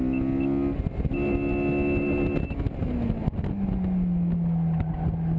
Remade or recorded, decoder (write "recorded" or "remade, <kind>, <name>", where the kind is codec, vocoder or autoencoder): recorded